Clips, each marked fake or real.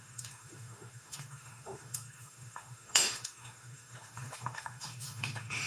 fake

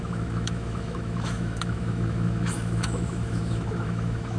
fake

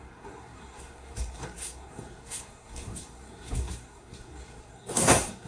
fake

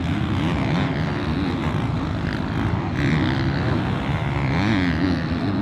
real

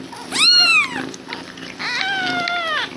real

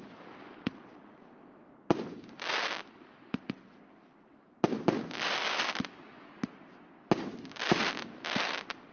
real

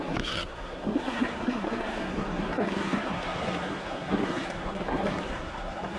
fake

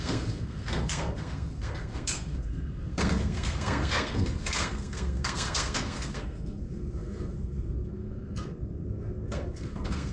fake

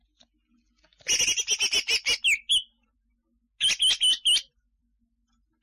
real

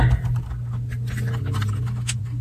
real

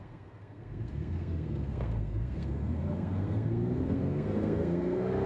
fake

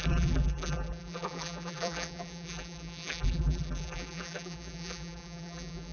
fake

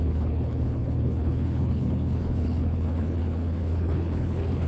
fake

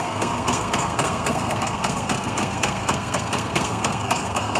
fake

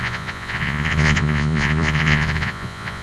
fake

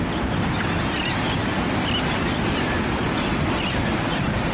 real